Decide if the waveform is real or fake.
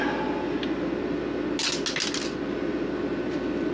real